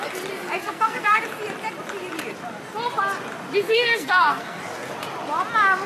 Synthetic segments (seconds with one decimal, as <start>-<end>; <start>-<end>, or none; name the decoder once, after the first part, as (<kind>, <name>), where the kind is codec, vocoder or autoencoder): 0.6-1.2 (codec, SNAC); 3.7-4.6